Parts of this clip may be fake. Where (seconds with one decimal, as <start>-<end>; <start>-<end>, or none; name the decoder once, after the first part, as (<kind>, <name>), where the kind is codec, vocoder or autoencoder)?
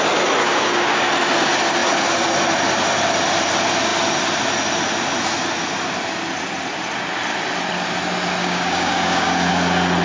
0.4-1.0 (codec, DAC); 8.4-9.5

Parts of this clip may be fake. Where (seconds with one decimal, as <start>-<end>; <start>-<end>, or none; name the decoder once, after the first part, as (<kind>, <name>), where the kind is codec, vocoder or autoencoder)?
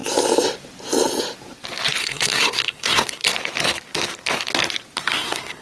2.0-3.3 (codec, SNAC); 5.0-5.6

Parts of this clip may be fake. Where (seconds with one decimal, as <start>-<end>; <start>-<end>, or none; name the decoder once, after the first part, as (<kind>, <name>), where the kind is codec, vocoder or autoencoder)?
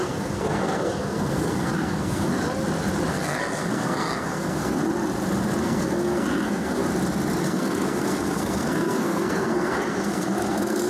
0.0-2.3 (codec, SNAC); 3.1-4.8; 5.6-6.8; 7.4-10.9